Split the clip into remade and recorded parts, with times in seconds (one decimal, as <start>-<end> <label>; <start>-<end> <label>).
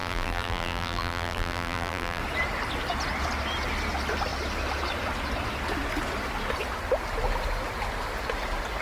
0.0-2.2 remade; 2.2-8.8 recorded